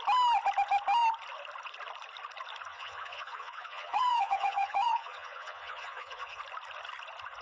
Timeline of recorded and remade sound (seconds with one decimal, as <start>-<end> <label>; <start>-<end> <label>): 0.0-2.7 recorded; 2.7-6.4 remade; 6.4-7.4 recorded